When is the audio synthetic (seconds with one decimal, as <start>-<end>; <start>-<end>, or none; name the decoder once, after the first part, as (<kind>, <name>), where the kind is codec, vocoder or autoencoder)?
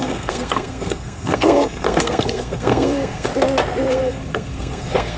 0.0-3.3 (codec, SNAC); 3.9-5.2